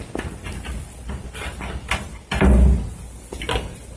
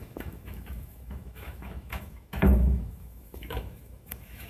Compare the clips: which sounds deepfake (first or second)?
second